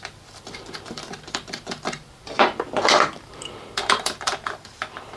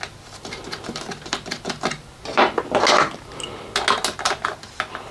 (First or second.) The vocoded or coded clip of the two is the first